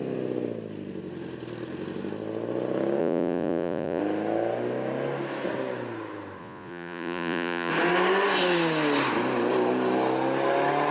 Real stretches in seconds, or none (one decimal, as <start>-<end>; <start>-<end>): 0.0-3.0; 4.0-6.4; 7.7-10.9